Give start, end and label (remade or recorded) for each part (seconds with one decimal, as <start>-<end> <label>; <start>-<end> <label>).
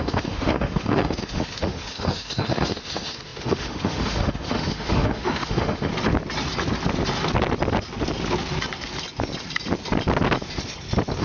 0.0-5.9 remade; 5.9-11.2 recorded